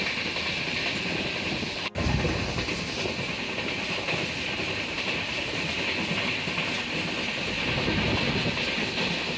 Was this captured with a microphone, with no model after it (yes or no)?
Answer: yes